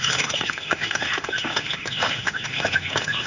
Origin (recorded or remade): remade